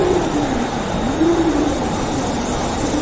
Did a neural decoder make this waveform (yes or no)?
no